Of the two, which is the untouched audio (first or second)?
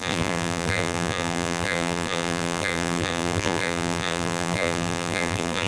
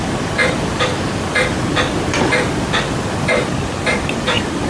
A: second